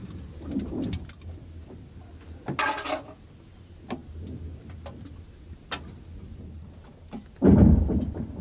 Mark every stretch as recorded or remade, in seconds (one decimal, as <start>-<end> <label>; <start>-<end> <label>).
0.0-8.4 recorded

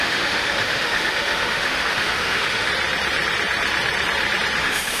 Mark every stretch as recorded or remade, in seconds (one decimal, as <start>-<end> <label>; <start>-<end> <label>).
0.0-2.7 remade; 2.7-4.6 recorded; 4.6-5.0 remade

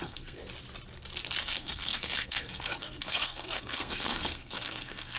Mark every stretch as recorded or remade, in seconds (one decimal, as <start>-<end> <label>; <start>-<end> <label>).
0.0-0.4 remade; 0.4-1.4 recorded; 1.4-5.2 remade

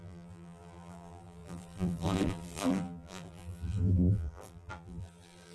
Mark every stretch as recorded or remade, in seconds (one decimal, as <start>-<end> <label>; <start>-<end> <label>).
0.0-5.5 remade

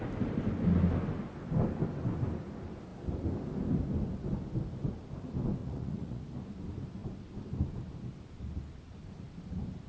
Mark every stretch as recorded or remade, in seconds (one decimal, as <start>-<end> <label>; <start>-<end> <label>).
0.0-5.6 recorded; 5.6-6.2 remade; 6.2-9.9 recorded